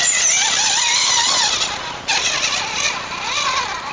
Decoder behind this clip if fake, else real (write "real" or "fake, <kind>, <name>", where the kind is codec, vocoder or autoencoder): real